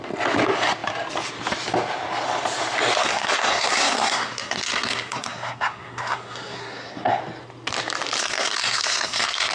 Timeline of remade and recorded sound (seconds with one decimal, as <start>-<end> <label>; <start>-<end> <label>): 0.0-3.0 recorded; 3.0-7.2 remade; 7.2-8.2 recorded; 8.2-9.5 remade